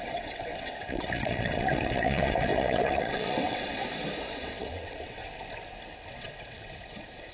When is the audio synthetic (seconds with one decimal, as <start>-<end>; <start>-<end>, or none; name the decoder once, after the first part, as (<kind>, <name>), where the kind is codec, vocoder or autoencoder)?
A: 0.0-3.8 (vocoder, WaveNeXt); 4.3-5.2; 6.1-7.3